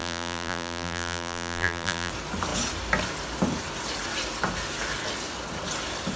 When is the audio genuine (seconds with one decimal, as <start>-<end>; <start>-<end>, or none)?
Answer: 2.1-6.2